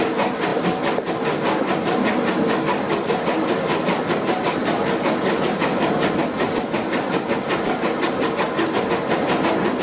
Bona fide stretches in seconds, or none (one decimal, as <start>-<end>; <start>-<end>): 0.0-4.6; 6.2-9.8